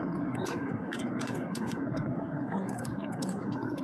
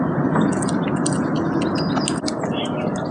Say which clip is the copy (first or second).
first